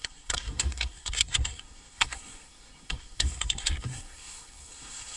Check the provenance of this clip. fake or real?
fake